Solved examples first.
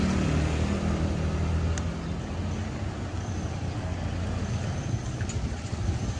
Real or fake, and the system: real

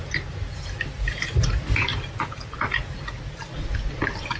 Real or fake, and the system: real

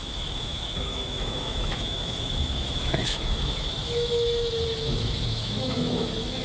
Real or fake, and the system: fake, autoencoder, DAC-VAE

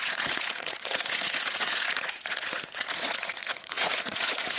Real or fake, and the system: fake, vocoder, Vocos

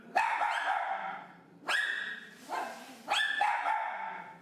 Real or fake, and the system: real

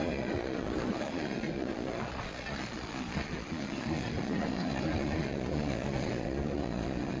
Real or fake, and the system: fake, vocoder, Vocos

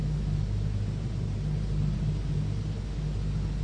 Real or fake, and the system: real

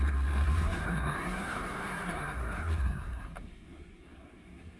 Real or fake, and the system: fake, codec, SNAC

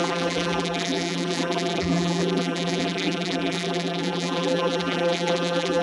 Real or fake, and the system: fake, vocoder, BigVGAN v2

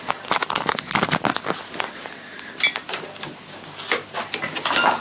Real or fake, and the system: real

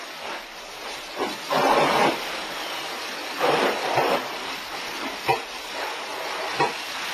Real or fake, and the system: real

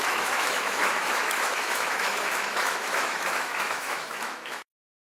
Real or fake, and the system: fake, autoencoder, DAC-VAE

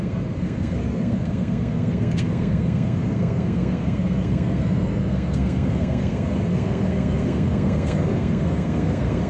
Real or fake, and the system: fake, codec, SNAC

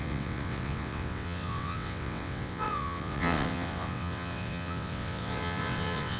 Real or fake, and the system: fake, vocoder, WaveNeXt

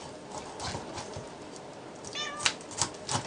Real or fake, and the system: real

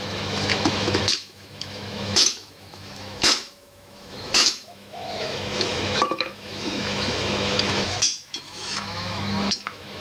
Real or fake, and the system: fake, autoencoder, DAC-VAE